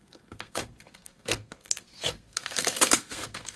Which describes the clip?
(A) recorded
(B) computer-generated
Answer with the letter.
B